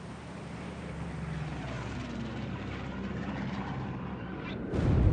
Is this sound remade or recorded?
remade